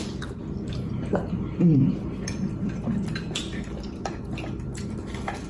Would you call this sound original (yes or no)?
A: no